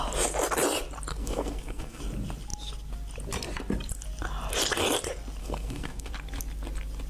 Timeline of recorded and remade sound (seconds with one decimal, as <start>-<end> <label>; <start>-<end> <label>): 0.0-1.1 recorded; 1.1-2.0 remade; 2.0-5.4 recorded; 5.4-6.1 remade; 6.1-7.1 recorded

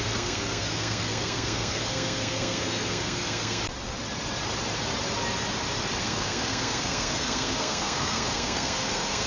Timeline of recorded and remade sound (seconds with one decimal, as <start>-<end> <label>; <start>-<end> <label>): 0.0-3.6 remade; 3.6-6.0 recorded; 6.0-9.3 remade